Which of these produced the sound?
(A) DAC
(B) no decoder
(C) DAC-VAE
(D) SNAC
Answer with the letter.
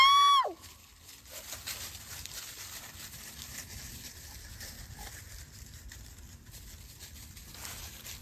B